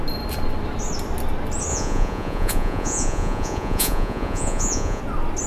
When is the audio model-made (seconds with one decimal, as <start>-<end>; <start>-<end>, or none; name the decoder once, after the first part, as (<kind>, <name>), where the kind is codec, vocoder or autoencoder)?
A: 1.7-5.0 (vocoder, Vocos)

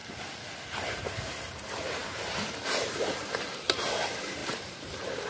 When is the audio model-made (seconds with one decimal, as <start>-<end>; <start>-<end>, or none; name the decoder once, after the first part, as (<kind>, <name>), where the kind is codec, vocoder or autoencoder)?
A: 1.0-5.3 (vocoder, BigVGAN v2)

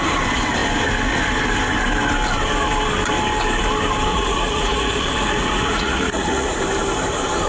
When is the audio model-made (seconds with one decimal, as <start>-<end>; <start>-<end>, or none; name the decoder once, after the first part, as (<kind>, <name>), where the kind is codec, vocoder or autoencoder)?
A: 4.1-6.6 (vocoder, Vocos)

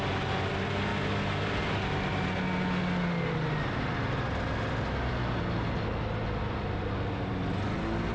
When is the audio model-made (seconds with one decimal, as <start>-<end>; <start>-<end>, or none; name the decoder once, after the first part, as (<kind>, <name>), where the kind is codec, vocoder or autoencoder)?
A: none

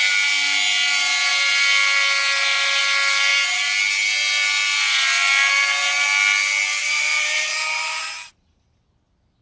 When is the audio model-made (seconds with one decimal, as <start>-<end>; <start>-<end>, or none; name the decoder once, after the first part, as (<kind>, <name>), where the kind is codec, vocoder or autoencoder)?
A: 6.8-8.0 (vocoder, BigVGAN v2)

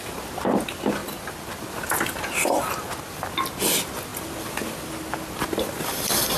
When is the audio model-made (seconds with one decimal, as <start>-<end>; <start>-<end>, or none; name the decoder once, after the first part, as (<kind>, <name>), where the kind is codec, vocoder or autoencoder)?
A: none

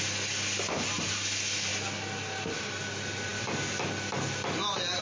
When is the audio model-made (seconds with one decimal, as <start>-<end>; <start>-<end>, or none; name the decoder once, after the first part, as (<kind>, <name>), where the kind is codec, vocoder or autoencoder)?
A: none